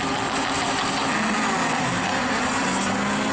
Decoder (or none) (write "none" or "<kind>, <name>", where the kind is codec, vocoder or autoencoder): none